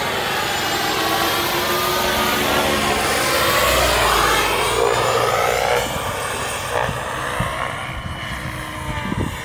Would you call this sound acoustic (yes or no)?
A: yes